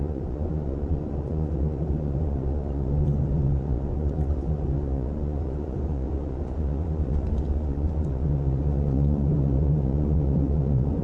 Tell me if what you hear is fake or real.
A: fake